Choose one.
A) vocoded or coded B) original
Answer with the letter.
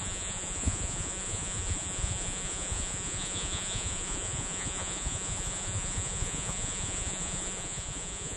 A